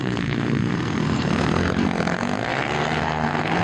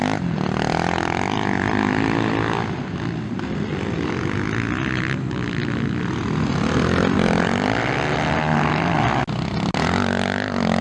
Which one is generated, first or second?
first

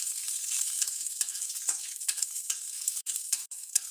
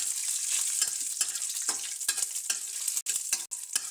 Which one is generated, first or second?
first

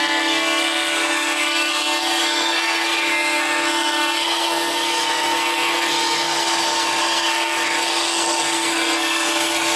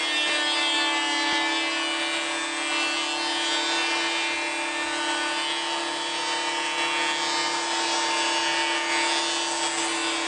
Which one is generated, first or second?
first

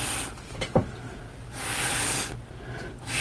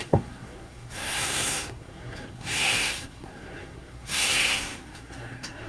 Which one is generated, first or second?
second